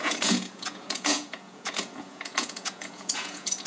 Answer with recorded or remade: remade